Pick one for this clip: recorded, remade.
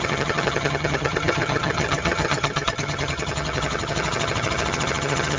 remade